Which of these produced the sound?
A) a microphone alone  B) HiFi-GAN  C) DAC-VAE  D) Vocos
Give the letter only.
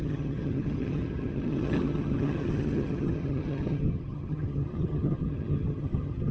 B